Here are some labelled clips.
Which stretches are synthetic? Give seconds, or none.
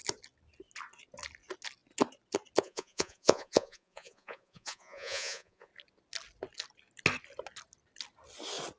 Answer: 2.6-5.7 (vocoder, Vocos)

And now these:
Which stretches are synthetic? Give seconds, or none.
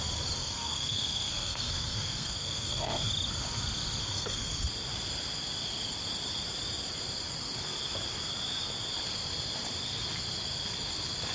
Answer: 0.4-3.1 (codec, SNAC); 4.0-4.5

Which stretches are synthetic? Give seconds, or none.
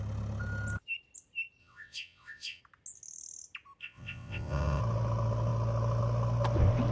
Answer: 1.6-2.6 (vocoder, WaveNeXt); 3.8-4.8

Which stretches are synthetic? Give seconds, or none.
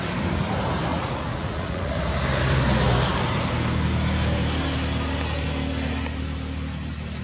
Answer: 0.9-2.0 (vocoder, Vocos)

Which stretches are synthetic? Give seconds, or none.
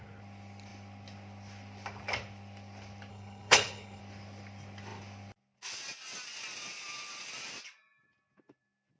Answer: 3.1-4.0 (codec, HILCodec)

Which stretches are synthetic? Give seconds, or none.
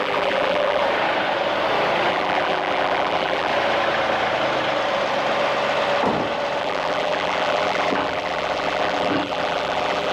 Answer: 0.0-0.8 (vocoder, BigVGAN v2); 2.1-3.5; 6.6-10.1